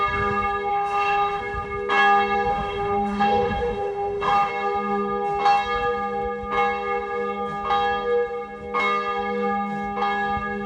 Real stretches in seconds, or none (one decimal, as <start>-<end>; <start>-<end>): 0.0-0.7; 1.4-2.5; 4.5-10.7